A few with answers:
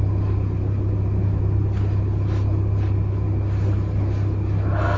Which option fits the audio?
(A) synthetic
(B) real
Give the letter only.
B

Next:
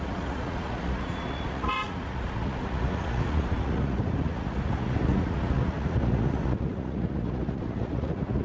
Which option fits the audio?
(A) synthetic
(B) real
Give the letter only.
A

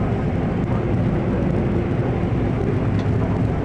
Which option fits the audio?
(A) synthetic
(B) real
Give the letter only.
B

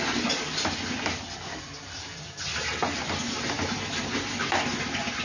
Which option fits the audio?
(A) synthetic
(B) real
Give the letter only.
B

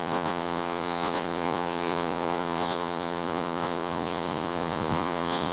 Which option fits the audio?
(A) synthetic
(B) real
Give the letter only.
A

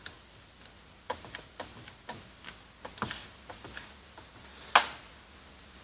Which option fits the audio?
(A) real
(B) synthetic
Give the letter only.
A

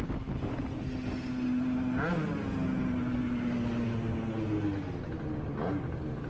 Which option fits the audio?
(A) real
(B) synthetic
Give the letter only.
A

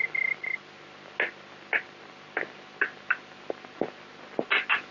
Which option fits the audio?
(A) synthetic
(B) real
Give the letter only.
B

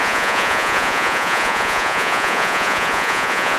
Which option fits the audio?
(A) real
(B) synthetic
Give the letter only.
B